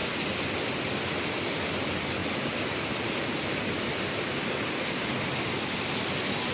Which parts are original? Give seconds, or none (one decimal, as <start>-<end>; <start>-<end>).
0.0-6.5